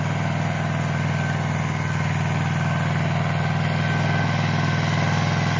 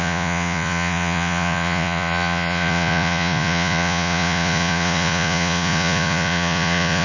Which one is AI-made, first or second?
second